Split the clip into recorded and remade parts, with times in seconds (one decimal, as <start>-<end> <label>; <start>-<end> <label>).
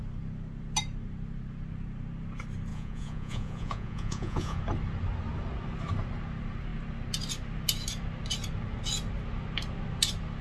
0.0-2.7 recorded; 2.7-4.6 remade; 4.6-10.4 recorded